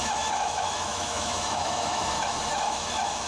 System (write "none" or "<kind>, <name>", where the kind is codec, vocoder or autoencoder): autoencoder, DAC-VAE